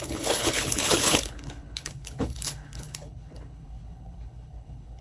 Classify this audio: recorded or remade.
remade